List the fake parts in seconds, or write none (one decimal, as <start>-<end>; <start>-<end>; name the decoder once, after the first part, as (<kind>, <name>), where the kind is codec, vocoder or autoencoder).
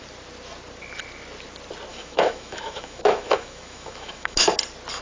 1.9-4.4 (autoencoder, DAC-VAE)